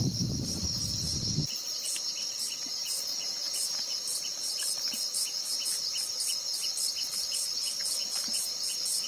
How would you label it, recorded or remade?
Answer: remade